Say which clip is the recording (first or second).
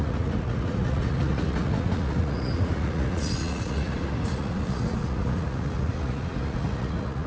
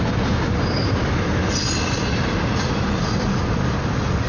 second